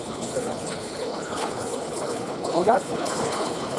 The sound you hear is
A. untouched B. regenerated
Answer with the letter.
B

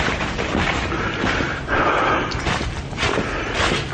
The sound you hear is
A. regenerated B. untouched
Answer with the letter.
B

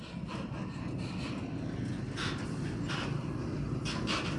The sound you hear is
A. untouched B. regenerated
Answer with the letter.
A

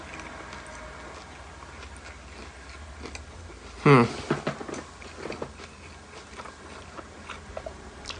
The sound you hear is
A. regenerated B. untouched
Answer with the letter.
B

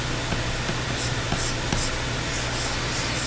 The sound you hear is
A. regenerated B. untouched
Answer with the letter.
B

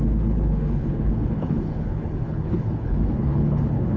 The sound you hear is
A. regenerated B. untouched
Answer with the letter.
A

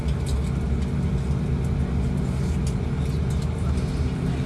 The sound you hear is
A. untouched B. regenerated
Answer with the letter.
A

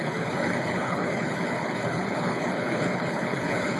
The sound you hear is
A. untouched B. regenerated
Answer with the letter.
B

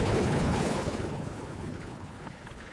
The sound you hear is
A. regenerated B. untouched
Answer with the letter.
A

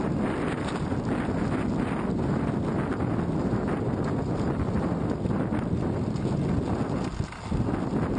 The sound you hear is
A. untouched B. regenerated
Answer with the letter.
A